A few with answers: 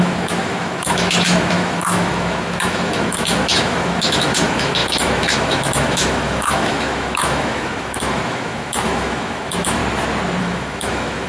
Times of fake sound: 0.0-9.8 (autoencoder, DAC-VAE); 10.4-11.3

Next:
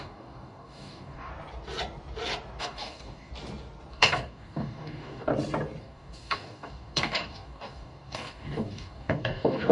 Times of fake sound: 0.0-1.3 (codec, DAC); 2.6-3.3; 3.9-5.3; 5.8-9.7

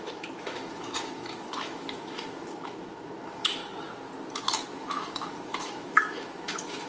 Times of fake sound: 0.0-3.6 (autoencoder, DAC-VAE); 4.7-6.9